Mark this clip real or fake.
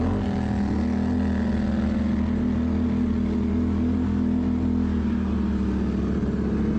real